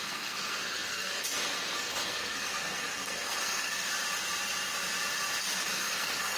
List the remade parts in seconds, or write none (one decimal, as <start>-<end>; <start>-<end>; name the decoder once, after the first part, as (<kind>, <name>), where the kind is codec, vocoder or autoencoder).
0.0-3.9 (codec, SNAC); 5.4-6.4